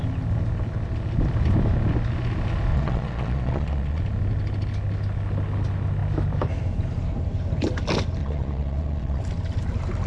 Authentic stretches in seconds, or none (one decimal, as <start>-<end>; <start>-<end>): 0.0-2.7; 4.0-8.2; 9.2-10.1